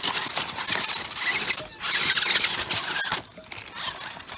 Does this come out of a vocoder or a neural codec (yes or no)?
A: no